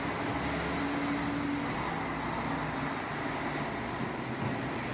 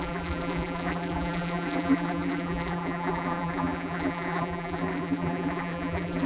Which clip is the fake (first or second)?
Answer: second